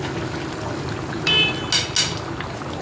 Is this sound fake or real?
real